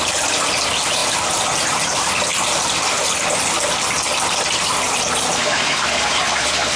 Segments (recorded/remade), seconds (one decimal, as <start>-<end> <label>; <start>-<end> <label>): 0.0-6.8 recorded